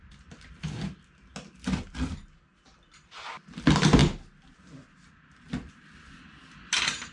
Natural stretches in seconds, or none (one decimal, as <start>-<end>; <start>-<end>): 0.0-7.1